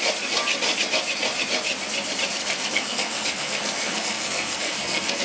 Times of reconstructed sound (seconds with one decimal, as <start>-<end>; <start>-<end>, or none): 2.4-5.2